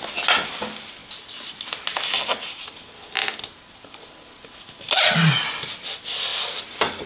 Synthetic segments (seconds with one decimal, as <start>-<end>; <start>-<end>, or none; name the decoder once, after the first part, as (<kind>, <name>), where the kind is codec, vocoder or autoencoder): none